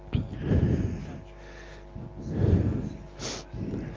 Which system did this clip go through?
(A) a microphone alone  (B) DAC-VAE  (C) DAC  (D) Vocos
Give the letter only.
A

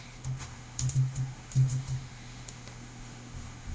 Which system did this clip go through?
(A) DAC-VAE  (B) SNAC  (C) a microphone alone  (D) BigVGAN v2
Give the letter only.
A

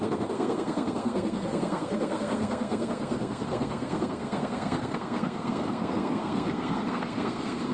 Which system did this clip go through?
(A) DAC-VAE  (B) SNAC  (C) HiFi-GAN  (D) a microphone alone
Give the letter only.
B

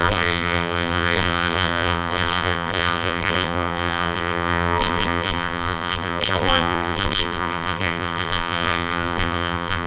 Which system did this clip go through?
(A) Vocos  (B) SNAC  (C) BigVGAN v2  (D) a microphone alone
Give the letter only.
C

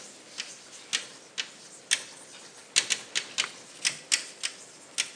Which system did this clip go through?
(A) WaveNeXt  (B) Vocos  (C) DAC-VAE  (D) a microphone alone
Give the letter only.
D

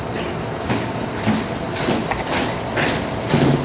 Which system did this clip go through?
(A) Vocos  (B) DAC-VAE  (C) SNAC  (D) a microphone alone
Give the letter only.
D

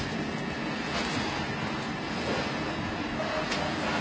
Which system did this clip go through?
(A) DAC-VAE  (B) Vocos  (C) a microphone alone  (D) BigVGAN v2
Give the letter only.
C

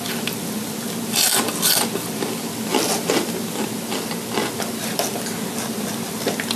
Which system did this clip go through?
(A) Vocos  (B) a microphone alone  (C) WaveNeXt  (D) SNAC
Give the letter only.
B